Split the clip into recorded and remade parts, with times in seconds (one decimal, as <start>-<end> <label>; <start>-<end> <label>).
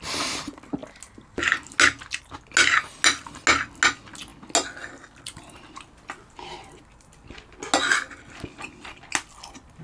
0.0-9.8 recorded